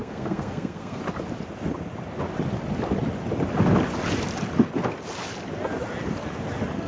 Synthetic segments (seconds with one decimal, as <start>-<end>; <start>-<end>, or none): 0.0-1.0